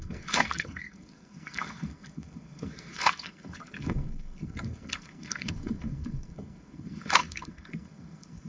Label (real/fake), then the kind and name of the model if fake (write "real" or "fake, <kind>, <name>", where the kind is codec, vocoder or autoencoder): fake, codec, SNAC